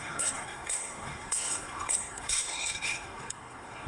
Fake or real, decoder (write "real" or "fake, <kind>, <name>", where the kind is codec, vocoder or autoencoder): fake, codec, SNAC